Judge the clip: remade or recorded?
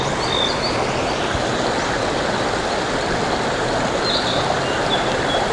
recorded